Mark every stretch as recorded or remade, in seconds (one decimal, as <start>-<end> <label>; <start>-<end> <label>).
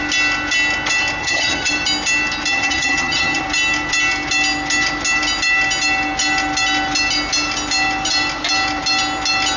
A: 0.0-1.2 recorded; 1.2-1.7 remade; 1.7-2.5 recorded; 2.5-3.4 remade; 3.4-9.6 recorded